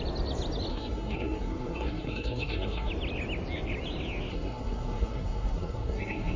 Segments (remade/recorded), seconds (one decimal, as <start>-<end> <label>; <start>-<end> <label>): 0.0-0.7 recorded; 0.7-2.9 remade; 2.9-4.3 recorded; 4.3-6.4 remade